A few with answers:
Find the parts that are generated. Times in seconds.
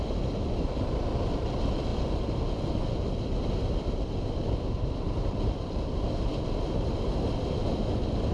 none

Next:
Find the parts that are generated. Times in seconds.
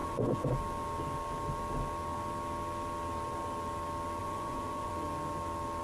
0.0-0.5 (vocoder, Vocos); 4.2-4.9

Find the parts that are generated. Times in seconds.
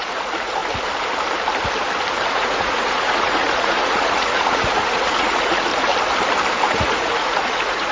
0.0-0.6 (vocoder, Vocos); 2.3-5.7; 6.5-7.9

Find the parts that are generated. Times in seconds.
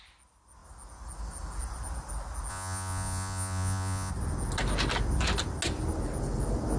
2.5-4.1 (vocoder, Vocos)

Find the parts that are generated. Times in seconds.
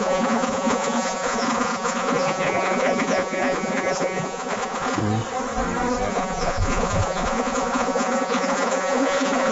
0.0-5.0 (vocoder, Vocos); 6.1-9.5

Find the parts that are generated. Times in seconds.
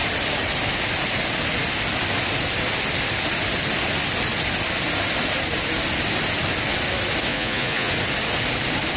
7.3-7.9 (vocoder, Vocos)